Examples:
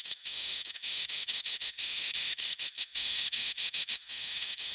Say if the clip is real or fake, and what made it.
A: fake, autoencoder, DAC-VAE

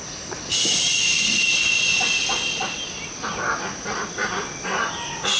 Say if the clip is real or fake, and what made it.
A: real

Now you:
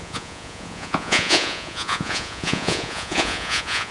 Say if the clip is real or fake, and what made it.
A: fake, vocoder, Vocos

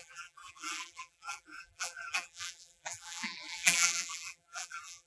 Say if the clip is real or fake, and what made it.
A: fake, vocoder, BigVGAN v2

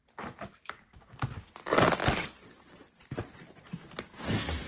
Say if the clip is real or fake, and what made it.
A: real